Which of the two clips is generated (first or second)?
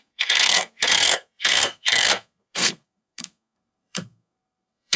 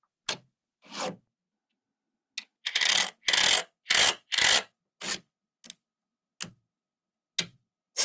first